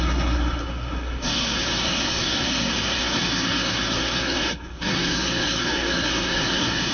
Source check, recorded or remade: remade